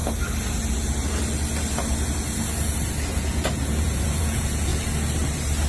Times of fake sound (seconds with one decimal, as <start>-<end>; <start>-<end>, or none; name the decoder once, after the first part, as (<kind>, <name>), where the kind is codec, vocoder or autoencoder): 3.1-4.7 (vocoder, Vocos)